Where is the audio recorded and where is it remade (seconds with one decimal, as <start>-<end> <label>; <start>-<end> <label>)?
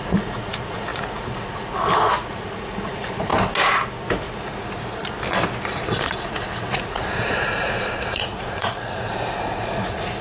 0.0-3.3 remade; 3.3-4.1 recorded; 4.1-5.0 remade; 5.0-5.7 recorded; 5.7-10.2 remade